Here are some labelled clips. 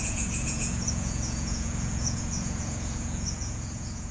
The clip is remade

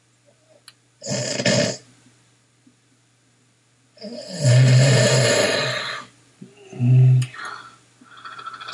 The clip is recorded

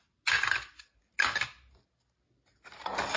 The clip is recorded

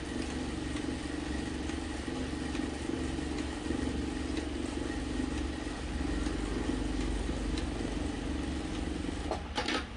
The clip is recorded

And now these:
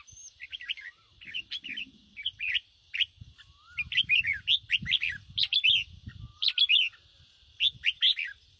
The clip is recorded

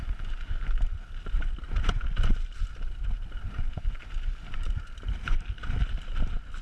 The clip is recorded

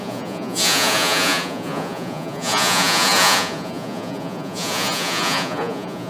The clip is remade